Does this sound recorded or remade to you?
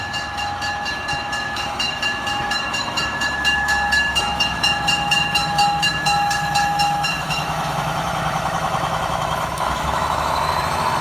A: remade